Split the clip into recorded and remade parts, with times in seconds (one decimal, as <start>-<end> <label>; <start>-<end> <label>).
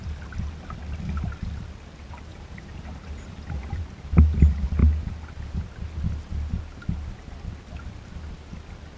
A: 0.0-2.3 recorded; 2.3-3.8 remade; 3.8-9.0 recorded